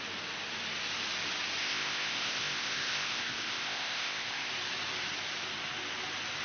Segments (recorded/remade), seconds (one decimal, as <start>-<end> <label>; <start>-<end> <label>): 0.0-1.6 recorded; 1.6-4.5 remade; 4.5-6.4 recorded